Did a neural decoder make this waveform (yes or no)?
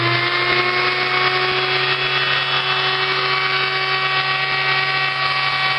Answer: no